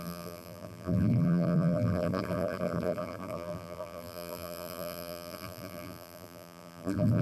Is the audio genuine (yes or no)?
no